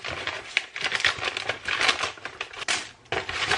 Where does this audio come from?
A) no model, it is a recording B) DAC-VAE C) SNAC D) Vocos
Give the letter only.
A